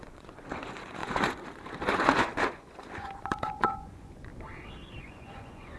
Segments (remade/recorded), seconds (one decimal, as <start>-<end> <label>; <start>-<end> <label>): 0.0-4.3 remade; 4.3-5.0 recorded; 5.0-5.8 remade